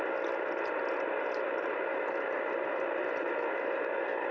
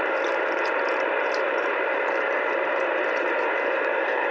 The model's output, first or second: second